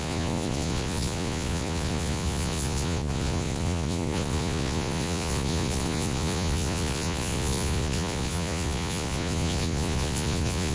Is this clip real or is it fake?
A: fake